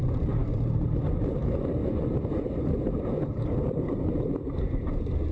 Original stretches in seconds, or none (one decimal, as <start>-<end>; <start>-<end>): none